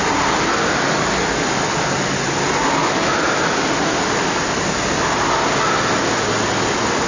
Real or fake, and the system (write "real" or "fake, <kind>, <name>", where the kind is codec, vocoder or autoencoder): real